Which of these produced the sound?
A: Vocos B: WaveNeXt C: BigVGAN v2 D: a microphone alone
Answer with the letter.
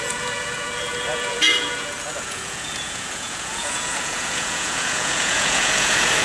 A